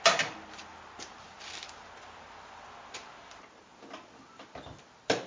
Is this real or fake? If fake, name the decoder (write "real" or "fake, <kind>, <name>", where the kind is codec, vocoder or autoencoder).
real